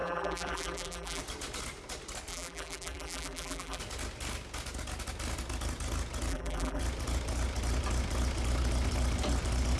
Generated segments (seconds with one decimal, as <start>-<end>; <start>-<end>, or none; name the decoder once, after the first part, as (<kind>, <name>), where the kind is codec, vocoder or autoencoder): 0.0-1.2 (vocoder, BigVGAN v2); 2.3-3.8; 6.3-6.8